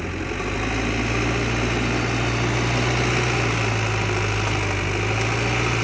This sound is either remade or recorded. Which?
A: recorded